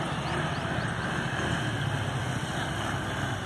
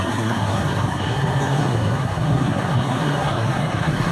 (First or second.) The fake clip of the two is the second